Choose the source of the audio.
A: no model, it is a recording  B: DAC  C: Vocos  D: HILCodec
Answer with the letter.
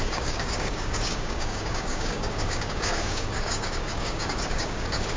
B